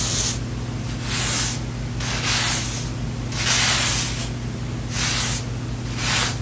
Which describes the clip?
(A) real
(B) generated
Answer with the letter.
A